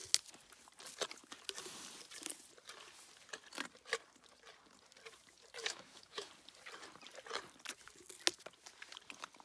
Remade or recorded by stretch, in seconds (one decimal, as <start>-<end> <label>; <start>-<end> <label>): 0.0-5.6 recorded; 5.6-6.3 remade; 6.3-9.4 recorded